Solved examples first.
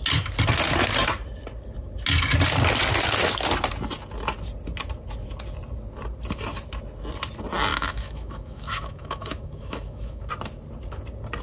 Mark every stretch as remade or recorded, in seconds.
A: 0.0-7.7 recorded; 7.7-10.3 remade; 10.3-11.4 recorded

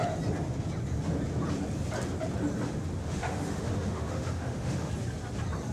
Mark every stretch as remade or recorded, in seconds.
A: 0.0-3.0 recorded; 3.0-4.9 remade; 4.9-5.7 recorded